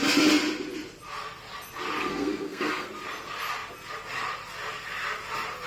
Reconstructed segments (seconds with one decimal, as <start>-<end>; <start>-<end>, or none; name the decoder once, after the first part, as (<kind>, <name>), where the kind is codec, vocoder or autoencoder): 2.0-2.9 (codec, SNAC)